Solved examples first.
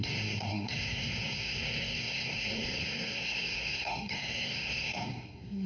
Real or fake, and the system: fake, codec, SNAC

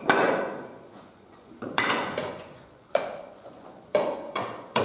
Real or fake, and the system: fake, vocoder, Vocos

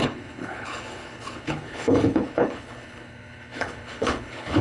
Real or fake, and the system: fake, codec, HILCodec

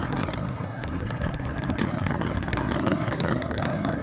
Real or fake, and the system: fake, codec, SNAC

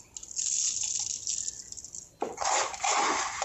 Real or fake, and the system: real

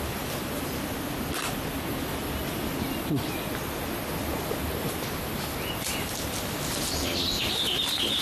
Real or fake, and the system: real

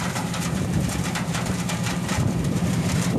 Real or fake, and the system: fake, vocoder, BigVGAN v2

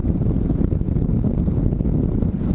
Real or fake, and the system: real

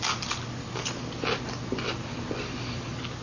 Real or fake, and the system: real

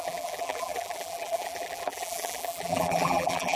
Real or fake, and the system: fake, vocoder, BigVGAN v2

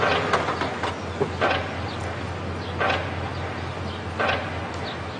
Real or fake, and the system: real